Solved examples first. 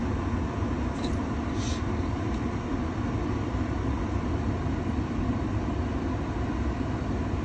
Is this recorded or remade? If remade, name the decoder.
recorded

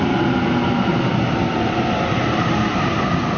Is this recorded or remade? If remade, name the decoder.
recorded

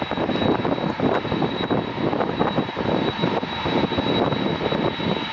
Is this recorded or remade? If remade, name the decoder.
recorded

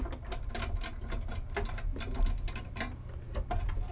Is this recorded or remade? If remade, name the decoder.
recorded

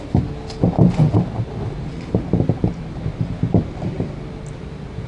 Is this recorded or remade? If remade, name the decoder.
recorded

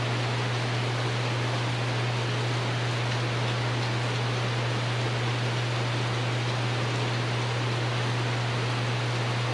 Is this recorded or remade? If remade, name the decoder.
recorded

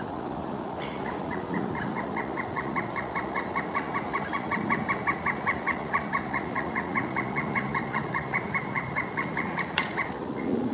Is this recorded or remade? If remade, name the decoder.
remade, vocoder, Vocos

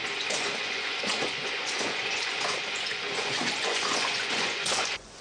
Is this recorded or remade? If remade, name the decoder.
remade, vocoder, Vocos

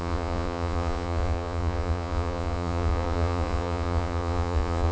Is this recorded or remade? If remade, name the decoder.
remade, vocoder, Vocos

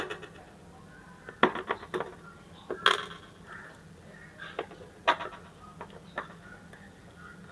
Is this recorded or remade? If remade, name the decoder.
recorded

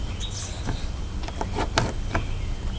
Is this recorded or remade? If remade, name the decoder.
recorded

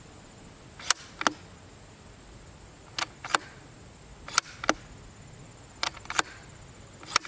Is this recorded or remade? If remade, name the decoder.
recorded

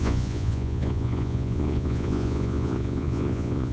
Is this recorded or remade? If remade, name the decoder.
remade, vocoder, Vocos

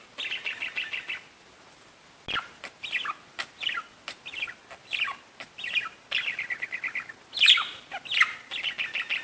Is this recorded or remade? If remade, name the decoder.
recorded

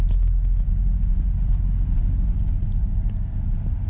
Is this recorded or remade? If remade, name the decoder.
recorded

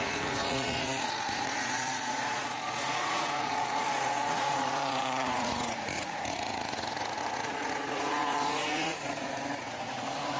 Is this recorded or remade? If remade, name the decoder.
remade, vocoder, Vocos